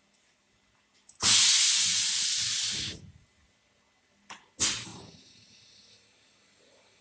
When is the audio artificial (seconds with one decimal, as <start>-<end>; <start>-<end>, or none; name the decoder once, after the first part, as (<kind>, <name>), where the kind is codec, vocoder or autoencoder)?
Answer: none